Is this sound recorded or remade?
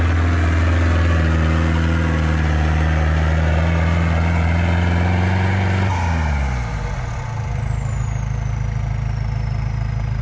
recorded